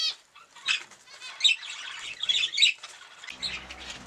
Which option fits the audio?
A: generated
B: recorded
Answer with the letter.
B